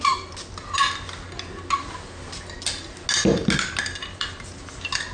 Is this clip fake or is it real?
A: real